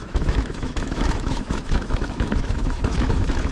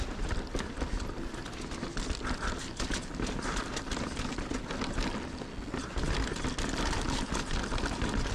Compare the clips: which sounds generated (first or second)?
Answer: first